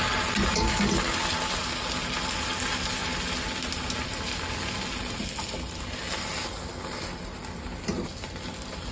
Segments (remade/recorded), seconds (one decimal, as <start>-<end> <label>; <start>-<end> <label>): 0.0-8.9 recorded